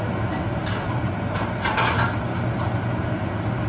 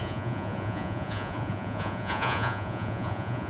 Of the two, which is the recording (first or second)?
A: first